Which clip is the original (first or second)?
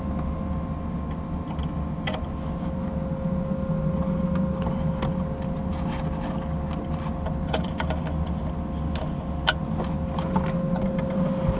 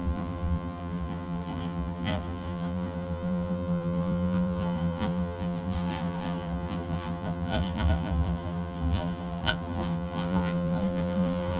first